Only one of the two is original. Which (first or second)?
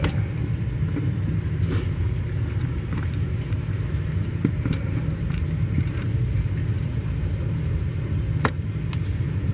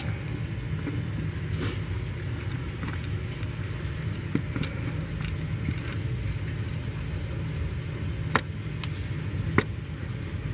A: second